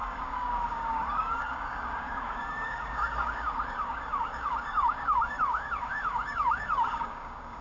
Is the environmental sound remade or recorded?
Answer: remade